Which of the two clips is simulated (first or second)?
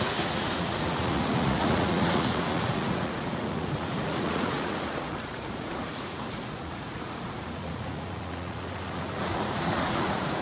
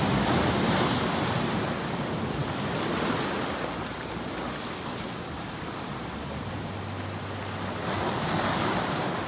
first